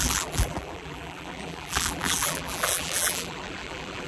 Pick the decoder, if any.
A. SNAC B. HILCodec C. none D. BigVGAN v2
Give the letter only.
D